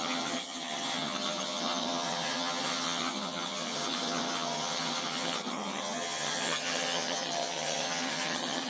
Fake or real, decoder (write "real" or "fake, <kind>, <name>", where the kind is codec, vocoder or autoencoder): fake, vocoder, HiFi-GAN